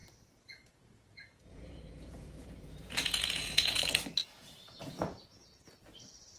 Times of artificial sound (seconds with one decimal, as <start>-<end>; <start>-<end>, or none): 0.0-3.8; 4.2-5.7